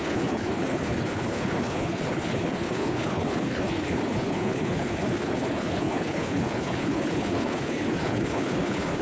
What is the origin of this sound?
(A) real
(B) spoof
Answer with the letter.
B